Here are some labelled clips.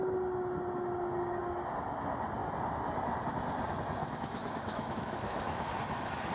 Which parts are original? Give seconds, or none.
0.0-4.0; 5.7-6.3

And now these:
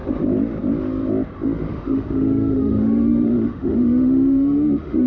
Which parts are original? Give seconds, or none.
0.0-1.7

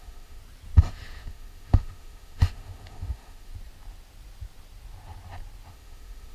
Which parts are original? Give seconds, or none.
0.4-0.9; 3.5-5.7

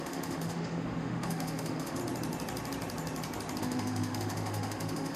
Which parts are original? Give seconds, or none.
2.0-3.6

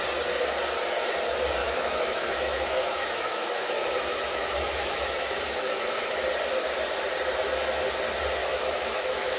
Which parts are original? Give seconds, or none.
0.0-1.6; 6.2-8.4

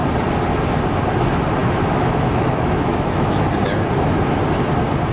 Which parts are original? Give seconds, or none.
0.0-1.6; 3.5-5.1